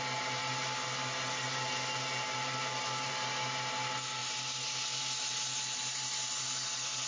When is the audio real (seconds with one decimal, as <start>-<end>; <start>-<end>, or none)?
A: 0.0-7.1